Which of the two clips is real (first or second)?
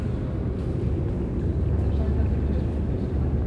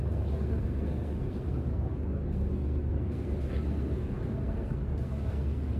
first